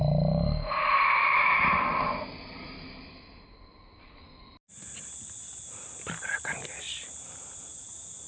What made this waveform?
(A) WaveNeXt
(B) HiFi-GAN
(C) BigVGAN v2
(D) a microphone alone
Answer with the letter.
D